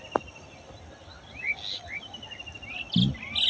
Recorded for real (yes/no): yes